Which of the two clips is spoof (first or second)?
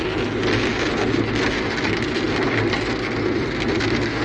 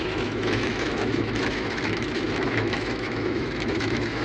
second